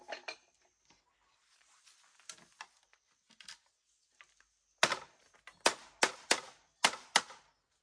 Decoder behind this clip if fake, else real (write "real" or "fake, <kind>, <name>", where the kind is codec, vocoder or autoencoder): real